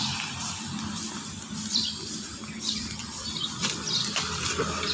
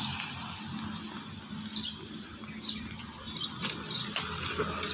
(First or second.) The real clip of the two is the second